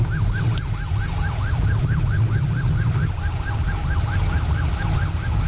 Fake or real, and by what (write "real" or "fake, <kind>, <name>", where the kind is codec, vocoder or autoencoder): real